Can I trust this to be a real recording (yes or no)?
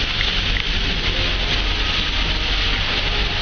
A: yes